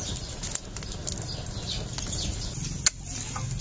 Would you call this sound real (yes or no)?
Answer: yes